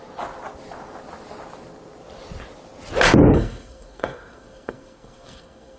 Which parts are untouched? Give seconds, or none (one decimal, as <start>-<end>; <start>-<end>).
0.0-3.3